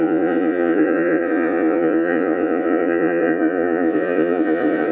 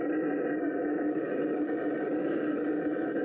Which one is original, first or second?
second